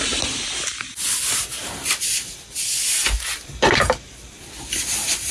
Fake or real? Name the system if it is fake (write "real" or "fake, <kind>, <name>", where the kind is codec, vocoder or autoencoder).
real